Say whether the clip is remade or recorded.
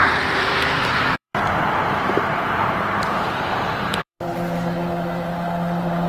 remade